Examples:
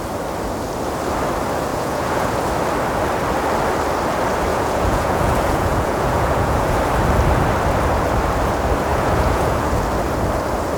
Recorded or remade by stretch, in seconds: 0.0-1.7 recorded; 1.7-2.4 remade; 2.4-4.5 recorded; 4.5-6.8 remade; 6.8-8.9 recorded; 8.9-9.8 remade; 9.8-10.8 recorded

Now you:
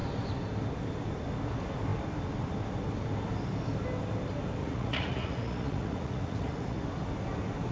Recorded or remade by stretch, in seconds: 0.0-4.6 recorded; 4.6-6.8 remade; 6.8-7.7 recorded